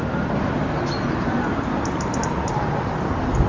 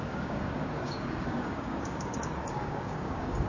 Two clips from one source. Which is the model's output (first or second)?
second